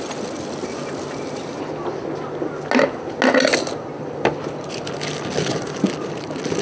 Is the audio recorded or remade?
recorded